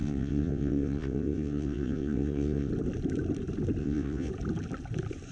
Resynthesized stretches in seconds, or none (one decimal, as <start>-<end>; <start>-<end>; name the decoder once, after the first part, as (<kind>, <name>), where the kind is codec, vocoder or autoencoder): 0.0-2.7 (vocoder, WaveNeXt); 3.8-4.3